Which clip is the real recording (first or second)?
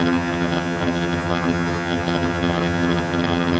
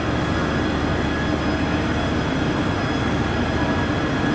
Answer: second